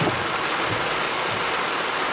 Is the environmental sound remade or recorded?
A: recorded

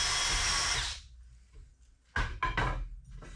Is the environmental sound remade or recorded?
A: recorded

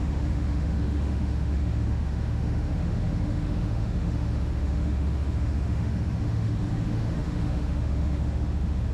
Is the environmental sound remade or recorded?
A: remade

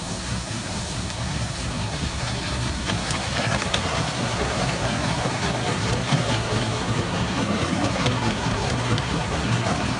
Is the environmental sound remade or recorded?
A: remade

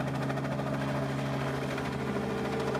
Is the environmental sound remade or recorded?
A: recorded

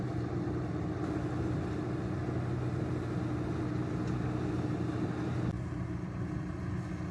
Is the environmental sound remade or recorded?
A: recorded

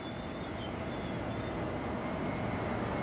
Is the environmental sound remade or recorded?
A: recorded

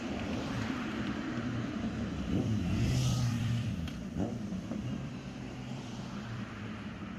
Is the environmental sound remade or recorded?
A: remade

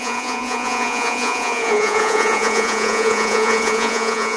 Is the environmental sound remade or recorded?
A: remade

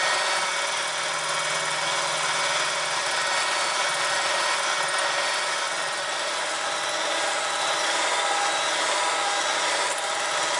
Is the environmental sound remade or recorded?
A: recorded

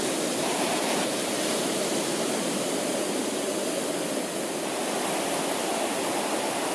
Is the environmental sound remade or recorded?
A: recorded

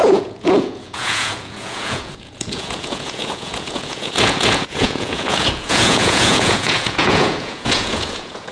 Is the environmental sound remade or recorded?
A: remade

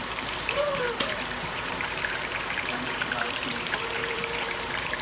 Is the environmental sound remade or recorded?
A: remade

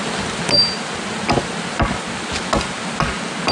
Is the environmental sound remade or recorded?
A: recorded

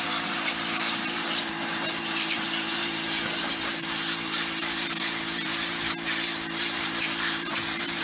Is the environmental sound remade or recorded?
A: remade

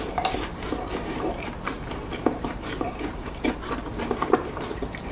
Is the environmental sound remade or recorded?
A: remade